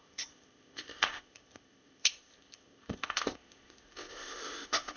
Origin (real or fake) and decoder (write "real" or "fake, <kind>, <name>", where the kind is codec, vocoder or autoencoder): fake, codec, ZipCodec